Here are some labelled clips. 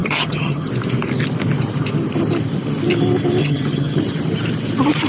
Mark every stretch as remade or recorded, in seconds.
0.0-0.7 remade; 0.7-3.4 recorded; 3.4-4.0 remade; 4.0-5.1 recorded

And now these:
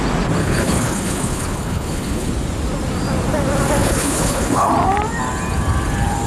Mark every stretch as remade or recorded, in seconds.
0.0-0.4 recorded; 0.4-2.3 remade; 2.3-3.8 recorded; 3.8-4.7 remade; 4.7-6.3 recorded

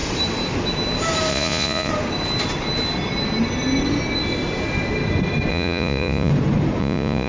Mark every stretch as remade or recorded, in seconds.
0.0-1.3 recorded; 1.3-1.9 remade; 1.9-5.5 recorded; 5.5-6.3 remade; 6.3-6.8 recorded; 6.8-7.3 remade